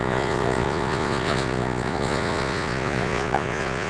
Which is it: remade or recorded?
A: remade